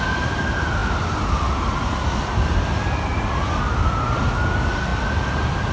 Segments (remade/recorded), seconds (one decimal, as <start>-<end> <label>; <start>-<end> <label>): 0.0-5.7 recorded